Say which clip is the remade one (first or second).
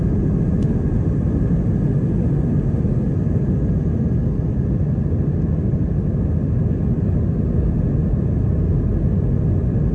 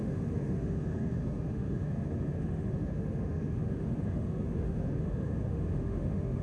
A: second